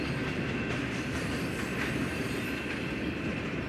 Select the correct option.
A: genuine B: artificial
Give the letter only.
A